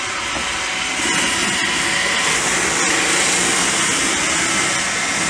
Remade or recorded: recorded